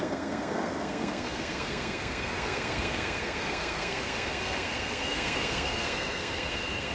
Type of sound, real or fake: fake